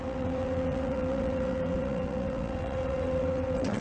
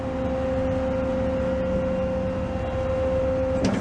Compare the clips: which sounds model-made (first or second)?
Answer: first